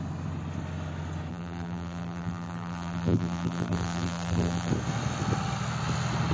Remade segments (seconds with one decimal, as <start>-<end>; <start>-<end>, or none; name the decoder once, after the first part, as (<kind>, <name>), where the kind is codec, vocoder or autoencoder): 1.3-4.7 (vocoder, BigVGAN v2)